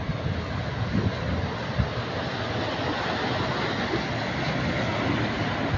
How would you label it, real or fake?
real